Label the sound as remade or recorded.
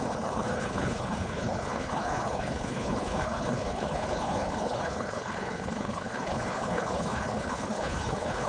remade